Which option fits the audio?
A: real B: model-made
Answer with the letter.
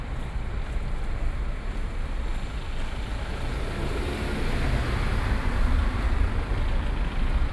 A